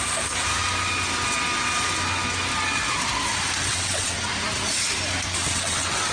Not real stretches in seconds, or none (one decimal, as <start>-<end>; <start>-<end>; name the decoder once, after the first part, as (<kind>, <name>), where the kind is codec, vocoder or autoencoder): 3.7-4.3 (vocoder, WaveNeXt); 5.4-6.1